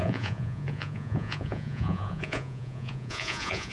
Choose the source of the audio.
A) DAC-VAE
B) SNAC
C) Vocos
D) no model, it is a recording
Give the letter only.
C